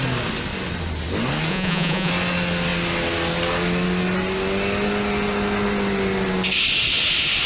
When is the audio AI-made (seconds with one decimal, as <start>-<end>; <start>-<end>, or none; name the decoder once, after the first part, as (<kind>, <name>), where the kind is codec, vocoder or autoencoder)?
1.5-2.1 (vocoder, Vocos)